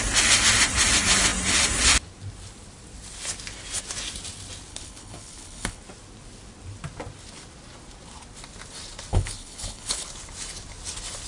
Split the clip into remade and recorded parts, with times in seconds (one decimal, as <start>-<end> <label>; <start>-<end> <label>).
0.0-4.7 recorded; 4.7-5.8 remade; 5.8-9.1 recorded; 9.1-10.1 remade; 10.1-11.3 recorded

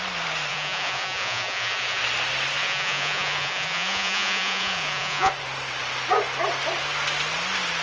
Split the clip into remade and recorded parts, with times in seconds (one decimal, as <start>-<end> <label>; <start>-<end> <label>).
0.0-0.5 recorded; 0.5-2.0 remade; 2.0-2.6 recorded; 2.6-5.3 remade; 5.3-7.8 recorded

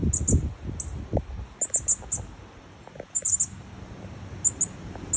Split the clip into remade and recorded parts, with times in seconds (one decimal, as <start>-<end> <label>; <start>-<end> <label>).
0.0-5.2 recorded

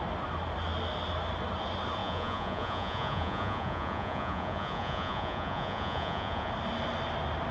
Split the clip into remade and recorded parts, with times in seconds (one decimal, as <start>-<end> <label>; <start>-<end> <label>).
0.0-2.0 recorded; 2.0-6.5 remade; 6.5-7.5 recorded

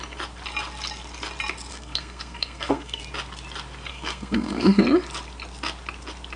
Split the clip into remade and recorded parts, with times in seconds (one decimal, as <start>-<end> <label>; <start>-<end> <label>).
0.0-1.7 recorded; 1.7-3.0 remade; 3.0-3.9 recorded; 3.9-4.8 remade; 4.8-6.4 recorded

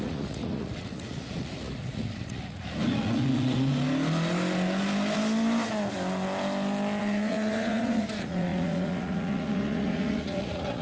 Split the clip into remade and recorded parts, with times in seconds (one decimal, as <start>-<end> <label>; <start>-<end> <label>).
0.0-3.7 remade; 3.7-7.0 recorded; 7.0-10.8 remade

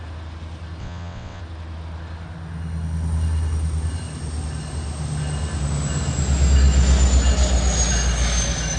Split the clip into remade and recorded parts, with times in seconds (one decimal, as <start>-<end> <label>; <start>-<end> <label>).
0.0-0.8 recorded; 0.8-1.4 remade; 1.4-8.8 recorded